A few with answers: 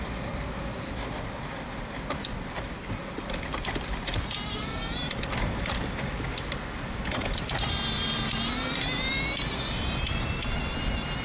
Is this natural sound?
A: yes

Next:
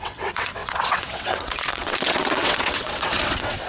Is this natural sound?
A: no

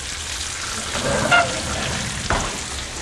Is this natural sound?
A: yes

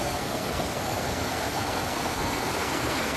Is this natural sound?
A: no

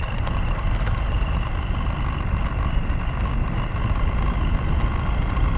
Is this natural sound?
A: yes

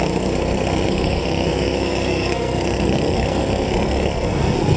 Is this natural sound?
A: no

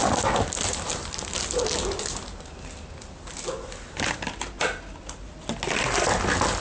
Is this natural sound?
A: yes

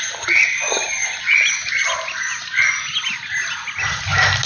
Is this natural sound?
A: yes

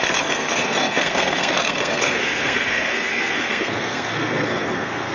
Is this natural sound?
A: no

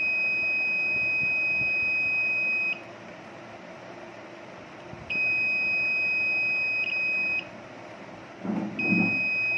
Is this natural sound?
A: yes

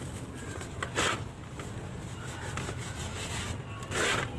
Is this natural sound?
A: yes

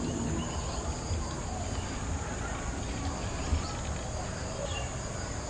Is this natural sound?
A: yes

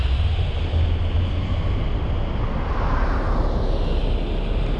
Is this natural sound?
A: yes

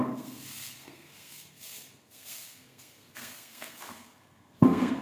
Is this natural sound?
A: no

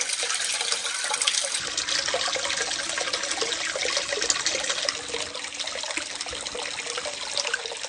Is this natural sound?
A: yes